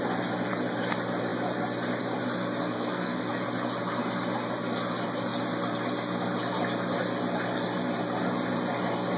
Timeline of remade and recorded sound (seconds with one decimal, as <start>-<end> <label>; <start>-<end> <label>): 0.0-2.6 recorded; 2.6-3.3 remade; 3.3-9.2 recorded